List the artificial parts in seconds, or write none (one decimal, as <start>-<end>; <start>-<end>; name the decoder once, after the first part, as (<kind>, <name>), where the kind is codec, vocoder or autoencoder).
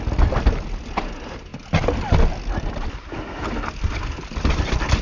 none